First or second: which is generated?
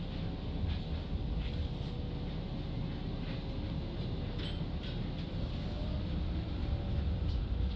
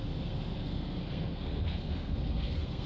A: second